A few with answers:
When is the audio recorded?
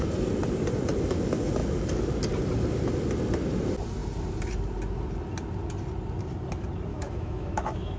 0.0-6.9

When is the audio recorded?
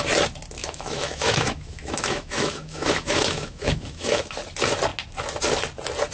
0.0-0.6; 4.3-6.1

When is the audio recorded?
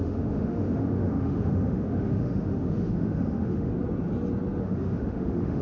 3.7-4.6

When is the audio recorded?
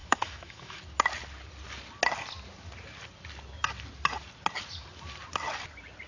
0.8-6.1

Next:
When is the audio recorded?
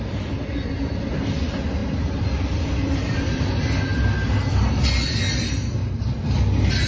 0.0-6.9